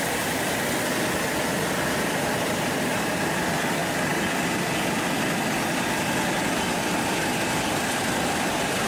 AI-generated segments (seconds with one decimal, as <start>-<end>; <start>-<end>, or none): 0.0-3.8; 6.8-8.9